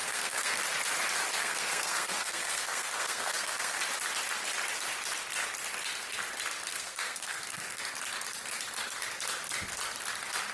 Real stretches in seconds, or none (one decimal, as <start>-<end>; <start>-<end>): 0.6-1.4; 3.8-6.7; 7.8-10.5